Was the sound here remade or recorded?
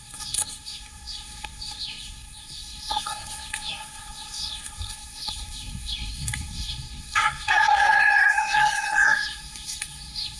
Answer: remade